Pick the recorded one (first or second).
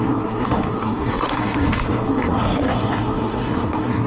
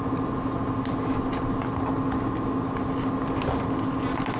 second